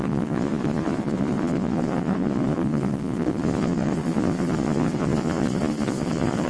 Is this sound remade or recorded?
remade